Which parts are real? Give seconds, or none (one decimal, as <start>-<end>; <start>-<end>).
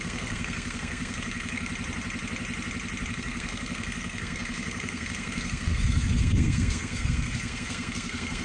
1.7-3.1